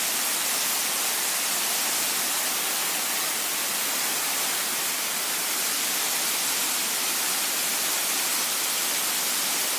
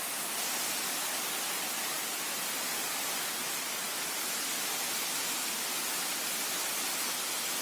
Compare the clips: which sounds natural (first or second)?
second